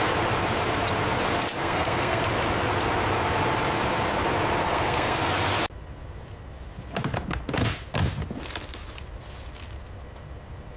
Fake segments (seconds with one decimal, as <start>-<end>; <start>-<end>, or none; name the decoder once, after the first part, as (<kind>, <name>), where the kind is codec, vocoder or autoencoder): 1.6-2.2 (codec, SNAC); 4.6-5.2